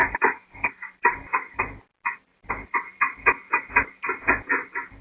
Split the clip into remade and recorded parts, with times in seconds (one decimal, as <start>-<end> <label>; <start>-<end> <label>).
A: 0.0-1.6 remade; 1.6-5.0 recorded